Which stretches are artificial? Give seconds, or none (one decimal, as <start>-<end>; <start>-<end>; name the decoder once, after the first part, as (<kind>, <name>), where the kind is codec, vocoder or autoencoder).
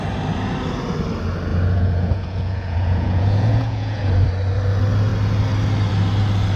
1.5-4.1 (vocoder, Vocos)